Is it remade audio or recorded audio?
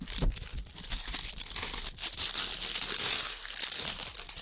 recorded